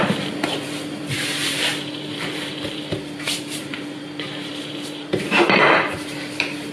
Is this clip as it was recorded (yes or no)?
no